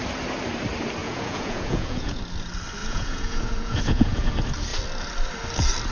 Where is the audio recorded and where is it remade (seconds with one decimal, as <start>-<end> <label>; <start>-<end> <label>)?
0.0-1.0 recorded; 1.0-2.2 remade; 2.2-2.8 recorded; 2.8-4.3 remade; 4.3-5.9 recorded